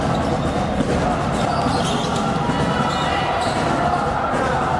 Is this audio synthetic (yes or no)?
no